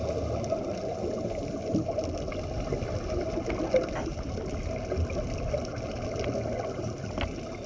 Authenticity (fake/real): real